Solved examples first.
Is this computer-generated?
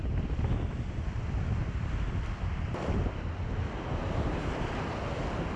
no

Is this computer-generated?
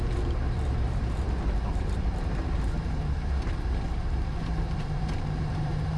yes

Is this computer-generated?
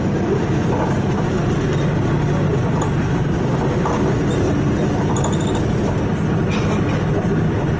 no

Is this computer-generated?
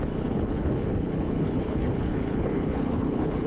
yes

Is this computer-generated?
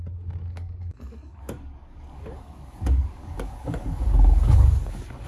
yes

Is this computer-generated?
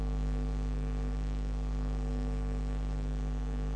yes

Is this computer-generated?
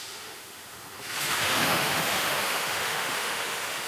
yes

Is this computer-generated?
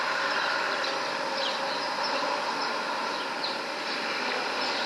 no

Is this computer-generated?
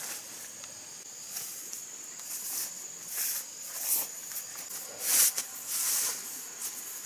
no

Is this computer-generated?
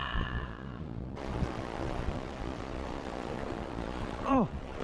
yes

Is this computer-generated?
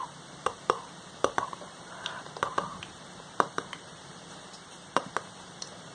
yes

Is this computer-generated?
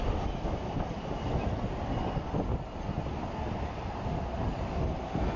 no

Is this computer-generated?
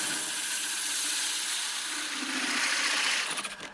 no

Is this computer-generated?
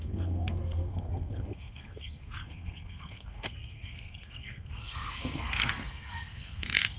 yes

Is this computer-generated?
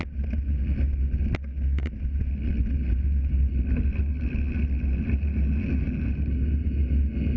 no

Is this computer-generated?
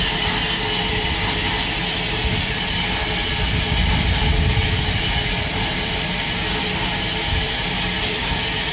no